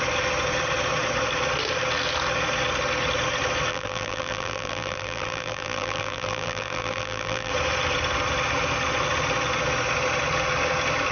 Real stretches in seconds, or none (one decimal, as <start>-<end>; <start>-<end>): 0.0-3.7; 7.5-11.1